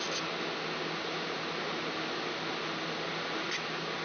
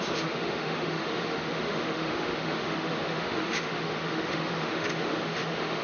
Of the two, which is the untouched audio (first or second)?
first